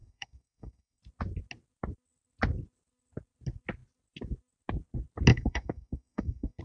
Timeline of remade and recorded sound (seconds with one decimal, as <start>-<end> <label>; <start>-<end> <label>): 0.0-1.0 remade; 1.0-5.3 recorded; 5.3-6.6 remade